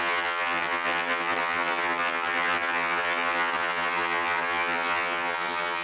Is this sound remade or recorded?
remade